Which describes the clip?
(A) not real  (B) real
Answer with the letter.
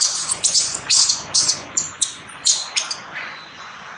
A